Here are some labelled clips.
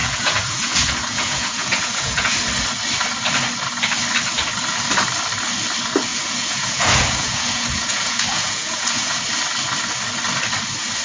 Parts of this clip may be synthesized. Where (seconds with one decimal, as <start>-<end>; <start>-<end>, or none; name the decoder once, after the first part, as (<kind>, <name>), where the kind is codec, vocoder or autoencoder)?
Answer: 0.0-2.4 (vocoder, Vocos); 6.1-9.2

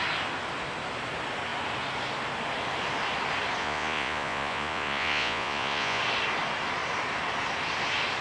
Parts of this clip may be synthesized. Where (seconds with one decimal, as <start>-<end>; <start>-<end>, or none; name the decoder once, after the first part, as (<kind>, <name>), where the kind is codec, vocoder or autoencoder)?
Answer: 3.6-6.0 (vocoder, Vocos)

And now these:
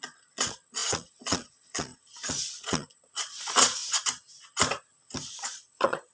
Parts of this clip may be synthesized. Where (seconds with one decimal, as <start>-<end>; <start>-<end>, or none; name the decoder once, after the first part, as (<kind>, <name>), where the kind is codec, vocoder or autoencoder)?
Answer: 0.0-3.8 (vocoder, Vocos); 5.3-6.1